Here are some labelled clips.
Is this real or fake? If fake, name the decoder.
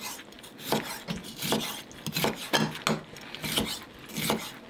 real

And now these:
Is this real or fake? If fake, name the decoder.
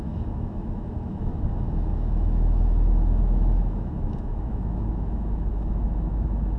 fake, autoencoder, DAC-VAE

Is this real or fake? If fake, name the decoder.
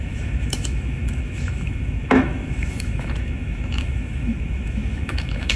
fake, autoencoder, DAC-VAE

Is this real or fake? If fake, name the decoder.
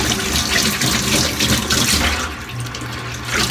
real